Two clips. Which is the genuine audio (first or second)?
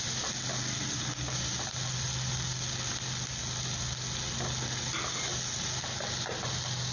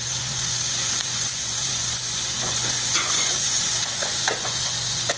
first